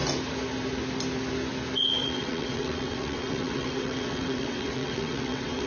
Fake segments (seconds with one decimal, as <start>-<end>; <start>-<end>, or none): 2.0-5.7